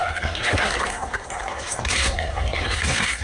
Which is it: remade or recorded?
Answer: remade